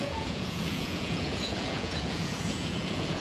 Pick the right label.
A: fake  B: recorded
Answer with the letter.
A